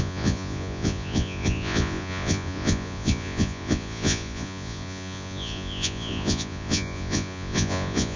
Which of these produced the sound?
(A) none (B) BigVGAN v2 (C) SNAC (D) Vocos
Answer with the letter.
D